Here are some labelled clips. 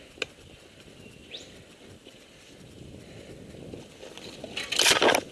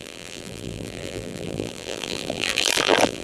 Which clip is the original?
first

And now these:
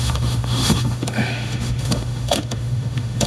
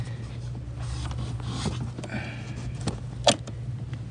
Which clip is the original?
second